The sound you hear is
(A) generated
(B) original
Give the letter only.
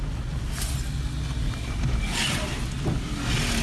B